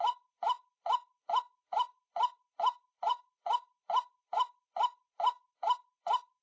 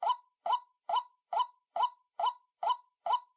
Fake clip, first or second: first